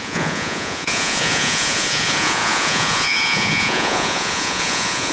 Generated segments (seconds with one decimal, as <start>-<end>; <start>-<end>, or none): 0.0-5.1